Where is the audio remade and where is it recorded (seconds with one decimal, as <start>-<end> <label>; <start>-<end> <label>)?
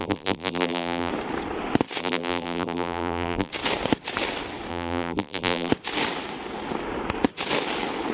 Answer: 0.0-1.1 remade; 1.1-2.0 recorded; 2.0-3.5 remade; 3.5-4.7 recorded; 4.7-5.7 remade; 5.7-8.1 recorded